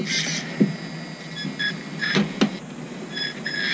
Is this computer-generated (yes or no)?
no